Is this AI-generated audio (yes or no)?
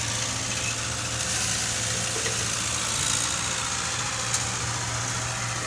no